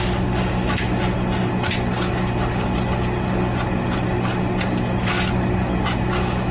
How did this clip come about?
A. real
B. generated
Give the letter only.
A